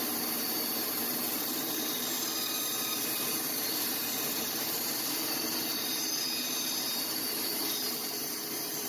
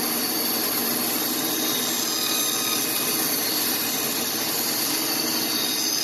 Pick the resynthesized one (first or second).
first